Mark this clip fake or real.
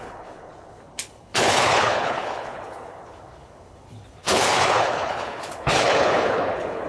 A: fake